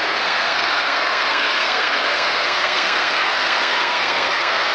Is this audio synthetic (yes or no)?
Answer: yes